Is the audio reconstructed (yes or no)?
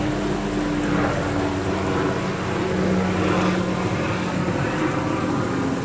no